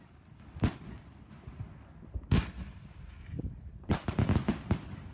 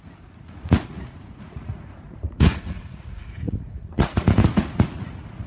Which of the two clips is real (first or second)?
first